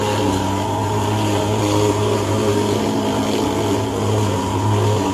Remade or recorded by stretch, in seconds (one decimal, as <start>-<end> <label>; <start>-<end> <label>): 0.0-5.1 recorded